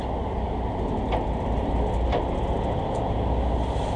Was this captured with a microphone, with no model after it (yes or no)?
yes